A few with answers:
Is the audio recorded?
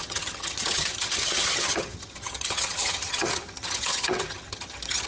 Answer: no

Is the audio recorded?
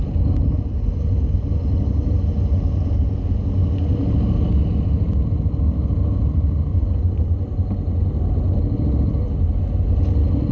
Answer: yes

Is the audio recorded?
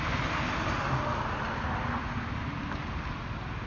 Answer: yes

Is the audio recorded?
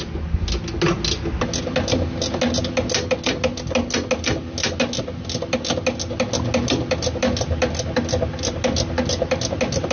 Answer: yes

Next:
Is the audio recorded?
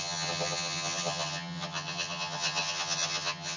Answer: no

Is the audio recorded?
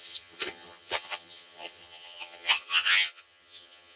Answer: no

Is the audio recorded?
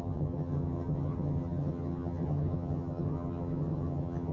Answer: no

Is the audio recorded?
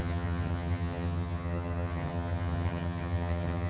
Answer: no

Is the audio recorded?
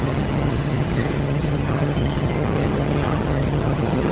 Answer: no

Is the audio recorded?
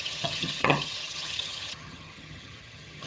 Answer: no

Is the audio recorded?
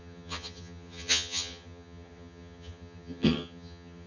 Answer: no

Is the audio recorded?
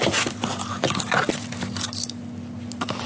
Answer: yes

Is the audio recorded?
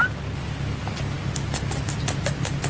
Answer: yes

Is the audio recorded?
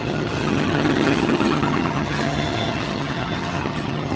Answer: no